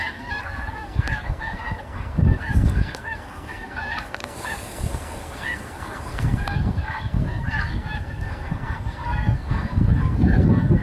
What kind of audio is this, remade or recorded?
remade